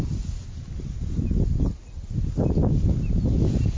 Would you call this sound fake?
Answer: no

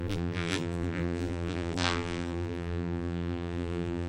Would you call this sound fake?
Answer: yes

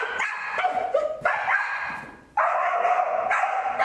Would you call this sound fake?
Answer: yes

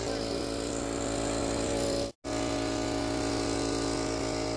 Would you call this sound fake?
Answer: no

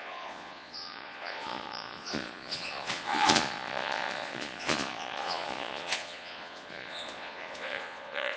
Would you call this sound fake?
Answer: yes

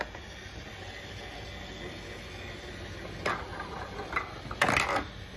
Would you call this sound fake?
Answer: no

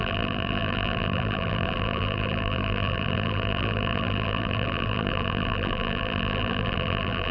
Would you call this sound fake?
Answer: yes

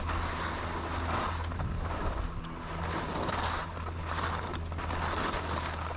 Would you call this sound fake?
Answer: no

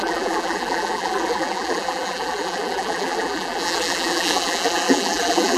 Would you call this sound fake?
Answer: yes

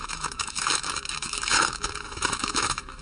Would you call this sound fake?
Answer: yes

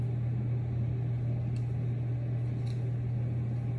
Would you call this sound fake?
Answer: no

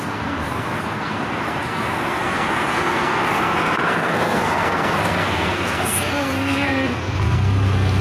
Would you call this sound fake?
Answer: yes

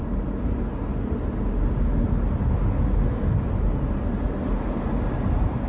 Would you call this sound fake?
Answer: no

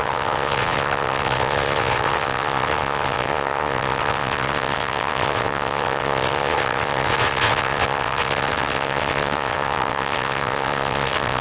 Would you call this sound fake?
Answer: yes